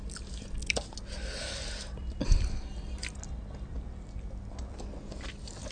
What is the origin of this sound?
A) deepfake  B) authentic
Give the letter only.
B